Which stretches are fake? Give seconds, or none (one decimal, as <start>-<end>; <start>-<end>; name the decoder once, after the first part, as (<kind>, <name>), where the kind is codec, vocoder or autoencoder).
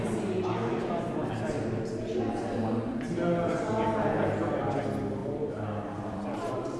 5.2-6.8 (vocoder, BigVGAN v2)